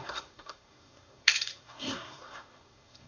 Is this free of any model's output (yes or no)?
no